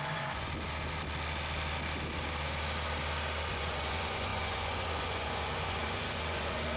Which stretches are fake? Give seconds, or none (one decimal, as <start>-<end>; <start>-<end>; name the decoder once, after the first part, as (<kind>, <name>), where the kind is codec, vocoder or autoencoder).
0.0-0.5 (vocoder, Vocos); 3.5-6.8